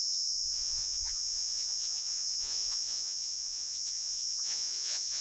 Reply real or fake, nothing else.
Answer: fake